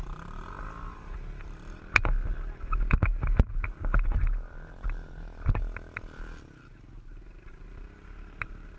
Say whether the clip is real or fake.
real